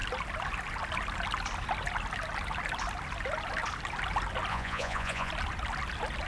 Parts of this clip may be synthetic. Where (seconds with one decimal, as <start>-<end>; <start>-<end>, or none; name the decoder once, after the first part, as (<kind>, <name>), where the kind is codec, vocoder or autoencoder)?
4.5-5.3 (vocoder, Vocos)